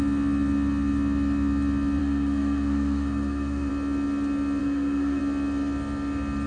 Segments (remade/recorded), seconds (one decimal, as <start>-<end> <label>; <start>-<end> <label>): 0.0-2.0 recorded; 2.0-3.7 remade; 3.7-4.6 recorded; 4.6-5.2 remade; 5.2-6.5 recorded